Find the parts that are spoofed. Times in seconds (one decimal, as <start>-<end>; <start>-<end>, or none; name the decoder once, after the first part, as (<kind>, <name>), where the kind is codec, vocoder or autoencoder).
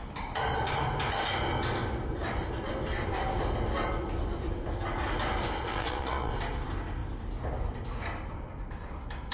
5.7-6.3 (vocoder, Vocos)